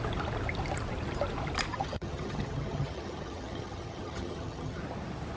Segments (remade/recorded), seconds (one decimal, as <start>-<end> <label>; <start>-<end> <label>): 0.0-1.7 recorded; 1.7-4.8 remade; 4.8-5.4 recorded